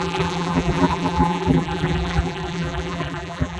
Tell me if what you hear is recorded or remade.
remade